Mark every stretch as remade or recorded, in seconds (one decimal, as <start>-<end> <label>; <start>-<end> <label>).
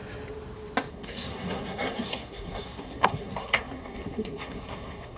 0.0-0.9 recorded; 0.9-5.2 remade